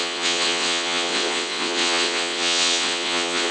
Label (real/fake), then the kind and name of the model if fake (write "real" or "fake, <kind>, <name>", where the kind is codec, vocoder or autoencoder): fake, vocoder, WaveNeXt